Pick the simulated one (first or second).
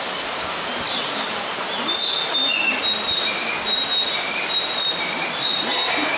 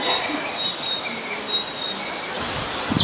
second